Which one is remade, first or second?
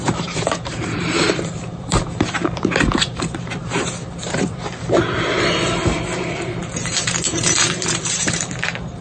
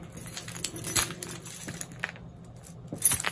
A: first